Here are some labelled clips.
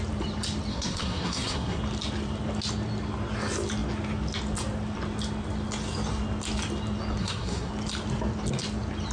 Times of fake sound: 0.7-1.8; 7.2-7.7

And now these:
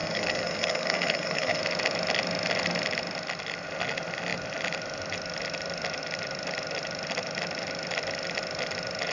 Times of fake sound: 0.0-1.6

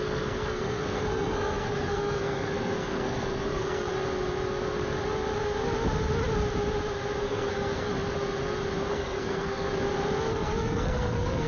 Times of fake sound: 0.0-3.9; 7.2-7.9; 8.9-9.7; 10.3-11.5

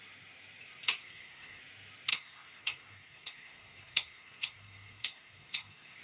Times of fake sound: 1.0-1.6; 2.1-6.0

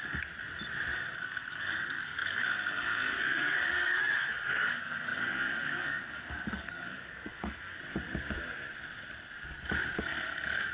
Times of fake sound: 1.2-7.8; 10.0-10.7